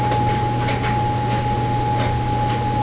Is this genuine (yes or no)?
yes